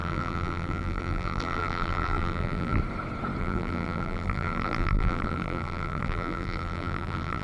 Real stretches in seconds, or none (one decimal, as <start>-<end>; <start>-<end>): 2.8-3.4